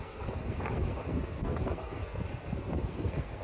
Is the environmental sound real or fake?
fake